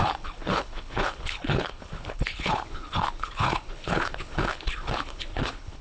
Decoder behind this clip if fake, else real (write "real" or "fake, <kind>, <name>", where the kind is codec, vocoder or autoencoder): fake, codec, HILCodec